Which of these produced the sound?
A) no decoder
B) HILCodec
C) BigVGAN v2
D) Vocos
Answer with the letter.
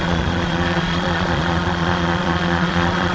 D